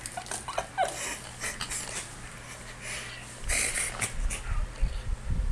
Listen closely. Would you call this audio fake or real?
real